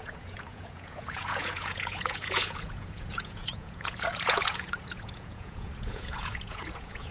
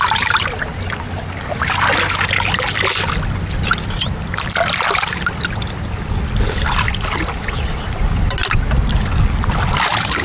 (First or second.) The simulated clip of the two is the first